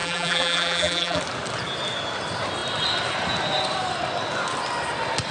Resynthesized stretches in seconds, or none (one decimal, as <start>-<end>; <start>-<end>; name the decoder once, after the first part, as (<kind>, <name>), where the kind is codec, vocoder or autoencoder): 0.0-1.2 (vocoder, BigVGAN v2)